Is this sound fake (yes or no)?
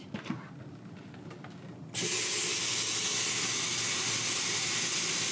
no